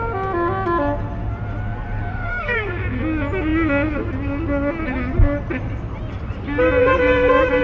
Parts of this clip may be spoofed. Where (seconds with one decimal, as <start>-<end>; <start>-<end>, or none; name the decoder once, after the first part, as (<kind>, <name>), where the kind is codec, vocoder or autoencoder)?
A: 2.1-2.7 (codec, SNAC)